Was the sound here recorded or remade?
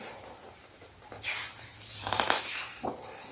remade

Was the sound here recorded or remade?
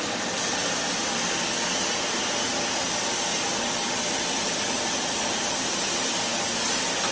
recorded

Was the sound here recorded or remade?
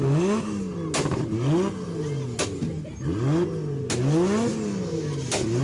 recorded